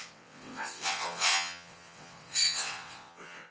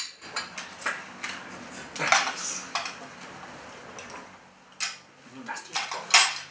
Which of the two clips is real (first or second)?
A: second